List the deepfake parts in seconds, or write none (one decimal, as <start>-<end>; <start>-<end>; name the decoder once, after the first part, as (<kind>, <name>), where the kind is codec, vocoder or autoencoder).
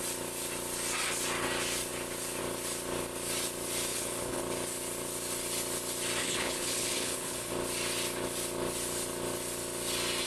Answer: 3.9-4.4 (codec, HILCodec); 6.2-7.5